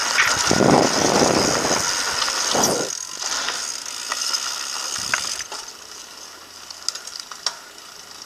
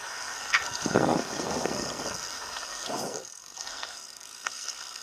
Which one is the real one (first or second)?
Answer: first